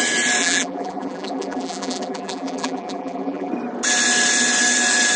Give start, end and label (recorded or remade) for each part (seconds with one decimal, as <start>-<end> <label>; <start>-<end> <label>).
0.0-0.4 recorded; 0.4-3.5 remade; 3.5-5.2 recorded